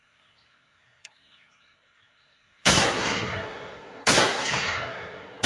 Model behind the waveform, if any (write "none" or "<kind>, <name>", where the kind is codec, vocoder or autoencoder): codec, SNAC